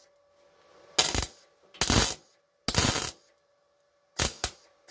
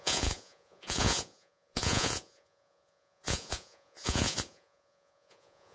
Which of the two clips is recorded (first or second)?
first